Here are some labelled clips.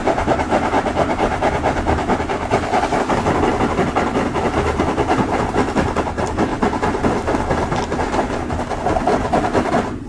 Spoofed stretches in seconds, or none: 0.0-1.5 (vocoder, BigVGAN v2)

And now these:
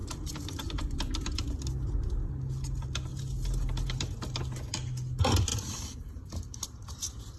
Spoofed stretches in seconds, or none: 0.0-2.3 (vocoder, BigVGAN v2); 3.1-4.4; 5.5-7.4

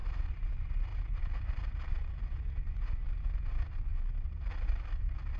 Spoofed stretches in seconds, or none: 0.0-0.5 (vocoder, BigVGAN v2); 0.9-3.4; 3.9-5.0

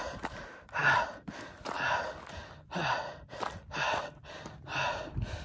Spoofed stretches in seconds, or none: none